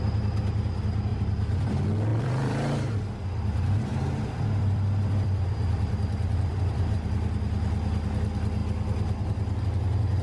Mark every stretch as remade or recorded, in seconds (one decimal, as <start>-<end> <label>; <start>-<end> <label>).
0.0-1.1 recorded; 1.1-1.7 remade; 1.7-2.1 recorded; 2.1-6.9 remade; 6.9-10.2 recorded